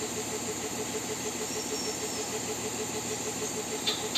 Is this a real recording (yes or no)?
yes